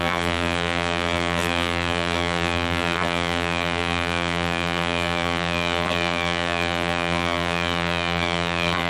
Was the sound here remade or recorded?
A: remade